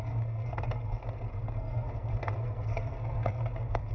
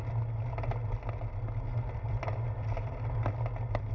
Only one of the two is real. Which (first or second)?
second